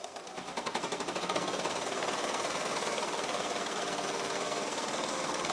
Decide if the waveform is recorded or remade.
remade